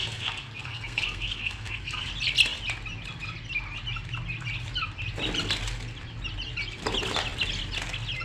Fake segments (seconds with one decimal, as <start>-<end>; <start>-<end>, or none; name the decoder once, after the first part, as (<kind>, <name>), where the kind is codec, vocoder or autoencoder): 0.0-2.1 (codec, SNAC)